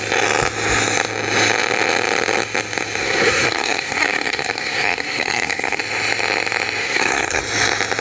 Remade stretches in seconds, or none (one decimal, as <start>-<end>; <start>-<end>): 3.0-5.8; 6.8-7.4